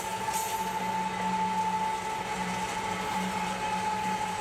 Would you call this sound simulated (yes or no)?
no